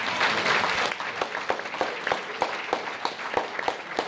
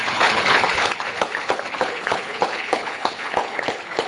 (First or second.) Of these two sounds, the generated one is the second